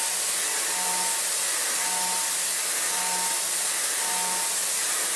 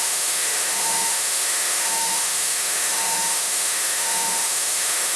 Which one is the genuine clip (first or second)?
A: first